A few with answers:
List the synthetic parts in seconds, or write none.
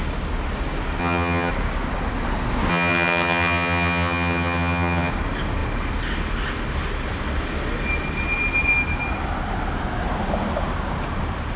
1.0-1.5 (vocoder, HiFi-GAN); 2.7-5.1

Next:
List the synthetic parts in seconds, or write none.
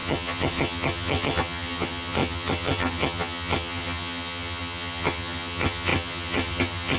0.0-7.0 (vocoder, HiFi-GAN)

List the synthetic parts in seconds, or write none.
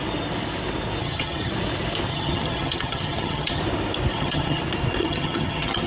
1.0-1.5 (vocoder, HiFi-GAN); 2.1-3.6; 4.1-4.6; 5.0-5.9